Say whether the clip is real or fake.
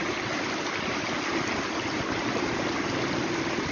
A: real